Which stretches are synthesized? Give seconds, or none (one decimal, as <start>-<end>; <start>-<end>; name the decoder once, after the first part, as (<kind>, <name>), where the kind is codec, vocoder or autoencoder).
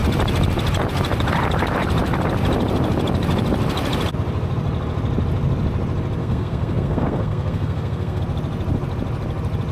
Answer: 6.2-8.2 (codec, SNAC)